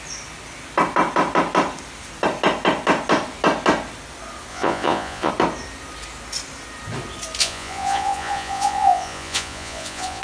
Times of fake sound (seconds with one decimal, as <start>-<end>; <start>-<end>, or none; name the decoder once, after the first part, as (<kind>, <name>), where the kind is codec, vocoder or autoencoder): 4.5-5.3 (vocoder, Vocos); 7.4-10.2